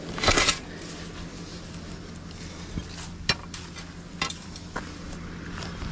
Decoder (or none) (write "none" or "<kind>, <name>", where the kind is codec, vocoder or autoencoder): none